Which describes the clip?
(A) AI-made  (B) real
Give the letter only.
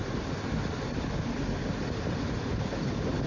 B